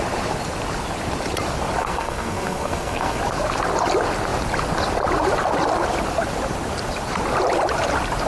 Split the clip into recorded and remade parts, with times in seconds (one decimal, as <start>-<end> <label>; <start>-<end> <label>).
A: 0.0-1.8 recorded; 1.8-3.2 remade; 3.2-8.3 recorded